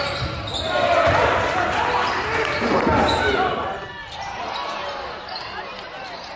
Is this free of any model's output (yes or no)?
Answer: yes